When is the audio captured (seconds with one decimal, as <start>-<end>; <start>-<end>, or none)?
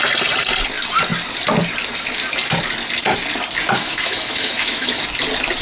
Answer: 0.0-3.8; 5.0-5.6